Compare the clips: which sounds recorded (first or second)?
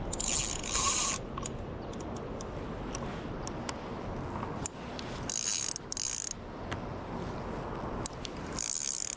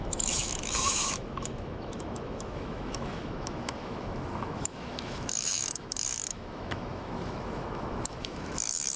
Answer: first